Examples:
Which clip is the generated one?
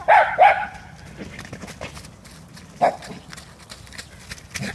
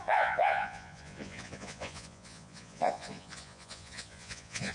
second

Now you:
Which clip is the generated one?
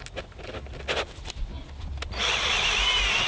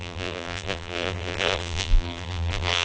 second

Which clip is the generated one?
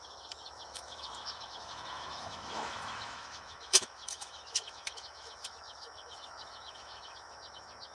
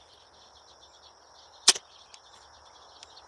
first